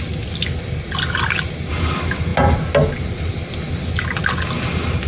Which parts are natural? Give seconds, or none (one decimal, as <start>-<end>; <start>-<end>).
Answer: 0.0-5.1